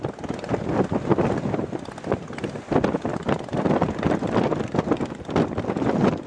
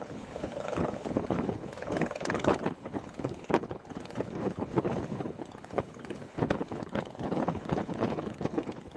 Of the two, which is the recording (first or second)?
first